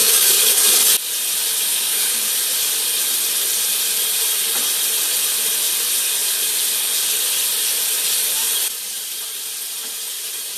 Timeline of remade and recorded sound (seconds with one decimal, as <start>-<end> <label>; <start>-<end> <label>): 0.0-0.7 remade; 0.7-1.7 recorded; 1.7-2.3 remade; 2.3-10.6 recorded